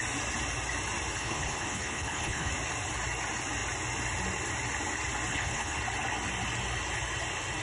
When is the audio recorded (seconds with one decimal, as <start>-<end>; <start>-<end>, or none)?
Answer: 0.0-1.2; 2.5-5.3; 5.8-7.6